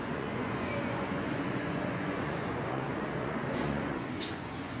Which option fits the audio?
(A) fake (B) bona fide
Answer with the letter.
A